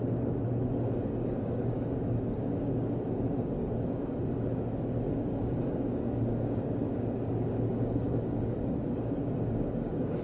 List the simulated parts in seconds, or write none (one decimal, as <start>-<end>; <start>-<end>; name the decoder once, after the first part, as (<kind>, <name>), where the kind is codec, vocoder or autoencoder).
1.1-4.2 (codec, DAC); 5.1-10.2